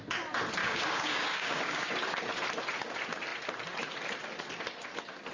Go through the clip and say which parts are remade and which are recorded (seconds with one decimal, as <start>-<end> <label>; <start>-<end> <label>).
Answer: 0.0-0.6 recorded; 0.6-1.9 remade; 1.9-5.3 recorded